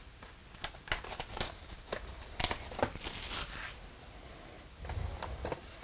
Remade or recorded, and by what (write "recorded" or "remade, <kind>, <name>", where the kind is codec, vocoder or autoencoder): recorded